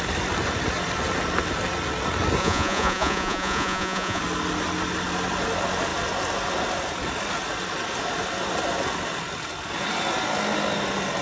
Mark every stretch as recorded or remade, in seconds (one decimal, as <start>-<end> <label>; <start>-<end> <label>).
0.0-2.4 recorded; 2.4-4.2 remade; 4.2-11.2 recorded